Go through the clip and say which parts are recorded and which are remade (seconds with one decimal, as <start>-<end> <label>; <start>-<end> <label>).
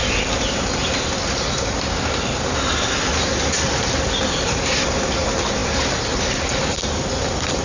0.0-7.6 recorded